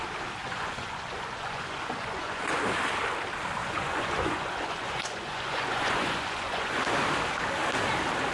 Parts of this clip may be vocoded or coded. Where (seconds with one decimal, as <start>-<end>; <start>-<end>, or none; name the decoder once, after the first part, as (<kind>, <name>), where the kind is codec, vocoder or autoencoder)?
0.4-2.5 (vocoder, Vocos); 3.6-6.9